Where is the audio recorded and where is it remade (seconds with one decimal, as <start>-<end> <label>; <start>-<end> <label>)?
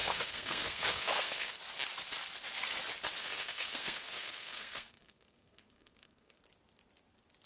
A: 0.0-1.6 remade; 1.6-3.2 recorded; 3.2-6.4 remade; 6.4-7.5 recorded